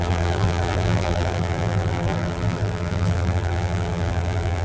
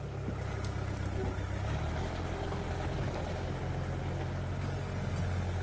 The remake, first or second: first